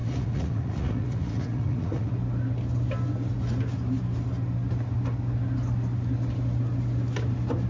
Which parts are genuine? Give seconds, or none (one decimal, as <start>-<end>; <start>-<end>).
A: 2.1-7.7